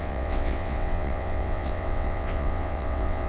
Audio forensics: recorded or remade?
remade